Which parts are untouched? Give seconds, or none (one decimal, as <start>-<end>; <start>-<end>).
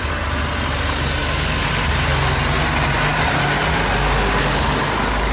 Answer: 0.0-5.3